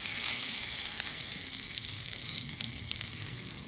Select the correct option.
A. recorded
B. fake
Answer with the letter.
B